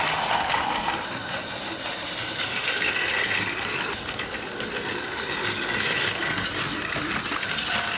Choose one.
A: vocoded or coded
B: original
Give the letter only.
B